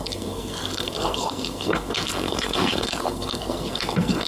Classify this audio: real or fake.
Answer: fake